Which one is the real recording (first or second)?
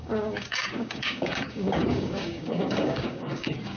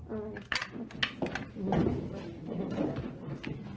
second